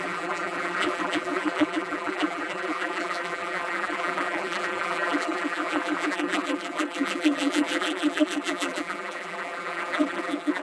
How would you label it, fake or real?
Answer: fake